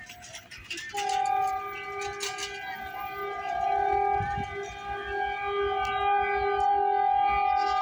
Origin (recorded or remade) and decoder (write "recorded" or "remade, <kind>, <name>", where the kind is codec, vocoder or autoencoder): recorded